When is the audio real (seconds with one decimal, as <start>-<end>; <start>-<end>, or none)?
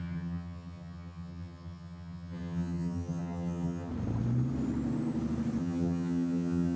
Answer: 3.9-5.6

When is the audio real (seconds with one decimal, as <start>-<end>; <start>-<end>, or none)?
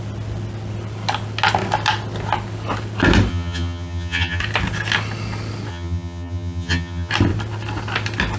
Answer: 0.0-3.3; 4.4-5.7; 7.1-8.4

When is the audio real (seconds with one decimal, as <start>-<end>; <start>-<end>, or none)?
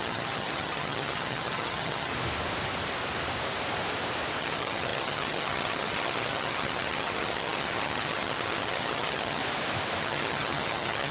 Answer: 2.1-4.4; 9.4-10.0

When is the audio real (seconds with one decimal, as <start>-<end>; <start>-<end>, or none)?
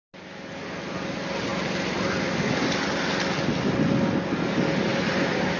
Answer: 0.0-5.6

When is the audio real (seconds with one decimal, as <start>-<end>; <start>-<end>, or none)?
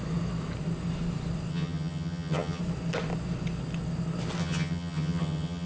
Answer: 0.0-1.5; 2.6-4.4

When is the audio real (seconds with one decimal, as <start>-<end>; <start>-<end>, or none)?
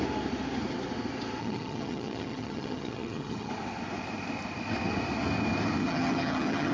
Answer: 0.0-1.4; 3.5-5.8